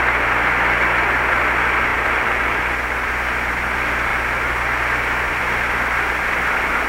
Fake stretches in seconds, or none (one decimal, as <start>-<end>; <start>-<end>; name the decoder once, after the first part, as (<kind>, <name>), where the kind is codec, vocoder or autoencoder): 1.9-2.6 (vocoder, BigVGAN v2)